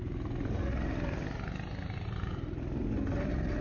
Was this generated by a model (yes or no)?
no